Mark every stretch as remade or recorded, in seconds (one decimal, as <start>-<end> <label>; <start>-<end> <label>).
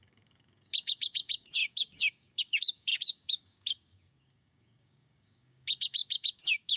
0.0-6.8 remade